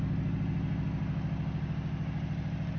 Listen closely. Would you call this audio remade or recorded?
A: recorded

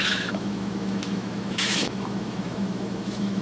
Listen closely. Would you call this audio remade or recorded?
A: remade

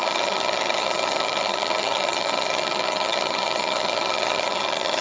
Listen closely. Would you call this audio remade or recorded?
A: remade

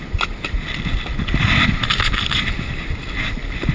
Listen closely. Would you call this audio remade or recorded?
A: recorded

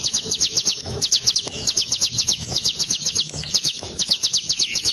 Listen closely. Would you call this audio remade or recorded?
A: remade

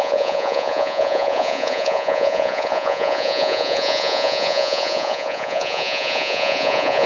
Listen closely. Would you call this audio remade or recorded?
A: remade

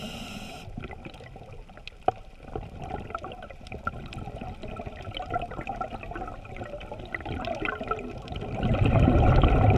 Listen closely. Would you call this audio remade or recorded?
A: recorded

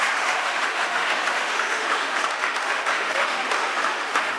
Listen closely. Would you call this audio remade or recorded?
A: remade